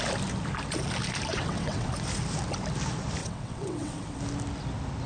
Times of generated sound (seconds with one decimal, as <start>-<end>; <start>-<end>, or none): 1.3-1.9; 3.2-4.2